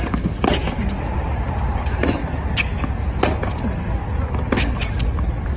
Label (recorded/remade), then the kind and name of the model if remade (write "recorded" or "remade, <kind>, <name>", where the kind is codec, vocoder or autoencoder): recorded